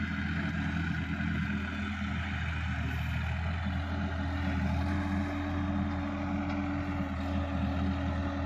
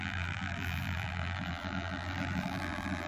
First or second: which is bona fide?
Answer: first